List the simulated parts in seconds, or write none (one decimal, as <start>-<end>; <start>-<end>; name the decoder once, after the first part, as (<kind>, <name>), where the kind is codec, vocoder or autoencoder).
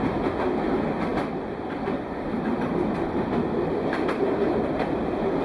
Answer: 1.1-3.4 (vocoder, BigVGAN v2)